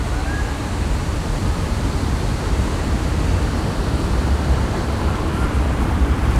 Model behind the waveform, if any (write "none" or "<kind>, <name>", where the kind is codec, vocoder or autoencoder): vocoder, BigVGAN v2